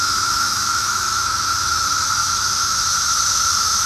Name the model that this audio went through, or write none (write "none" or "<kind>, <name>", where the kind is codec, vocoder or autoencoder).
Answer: autoencoder, DAC-VAE